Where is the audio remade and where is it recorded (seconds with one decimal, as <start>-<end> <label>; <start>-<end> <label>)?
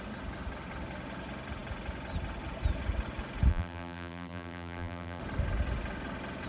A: 0.0-3.5 recorded; 3.5-5.2 remade; 5.2-6.5 recorded